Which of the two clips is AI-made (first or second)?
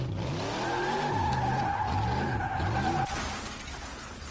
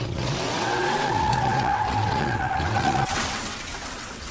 second